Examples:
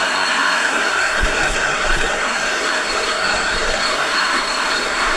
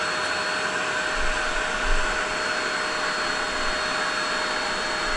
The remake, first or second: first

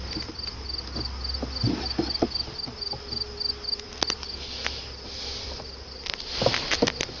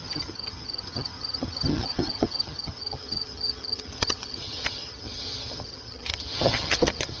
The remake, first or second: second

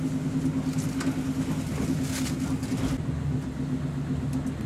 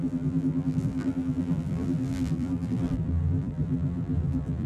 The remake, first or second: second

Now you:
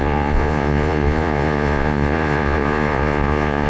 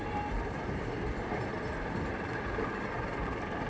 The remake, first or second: first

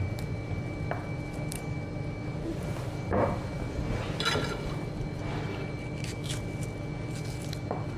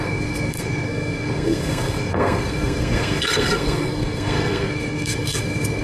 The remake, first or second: second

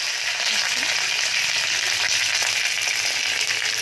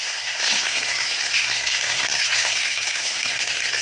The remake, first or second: second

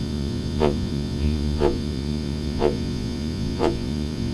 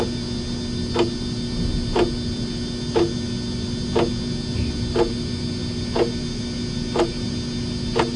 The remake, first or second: first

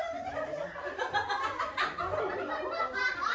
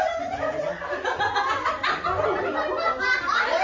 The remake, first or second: first